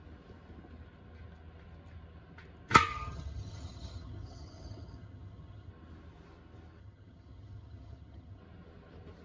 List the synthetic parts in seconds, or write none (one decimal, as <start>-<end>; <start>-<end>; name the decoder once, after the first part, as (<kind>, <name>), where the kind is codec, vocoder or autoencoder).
2.9-5.7 (vocoder, HiFi-GAN); 6.8-8.4

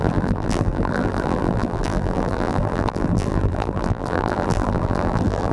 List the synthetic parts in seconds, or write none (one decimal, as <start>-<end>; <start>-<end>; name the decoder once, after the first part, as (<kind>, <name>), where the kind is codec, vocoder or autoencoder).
0.0-5.5 (vocoder, BigVGAN v2)